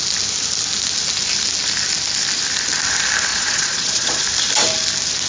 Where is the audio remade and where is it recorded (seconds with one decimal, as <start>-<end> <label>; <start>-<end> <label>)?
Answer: 0.0-3.3 recorded; 3.3-4.2 remade; 4.2-5.3 recorded